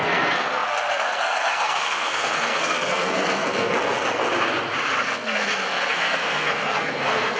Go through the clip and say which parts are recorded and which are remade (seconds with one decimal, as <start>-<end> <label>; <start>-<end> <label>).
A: 0.0-4.2 remade; 4.2-5.0 recorded; 5.0-7.4 remade